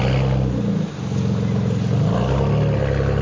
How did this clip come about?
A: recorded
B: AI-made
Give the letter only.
A